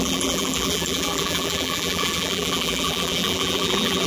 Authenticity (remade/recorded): remade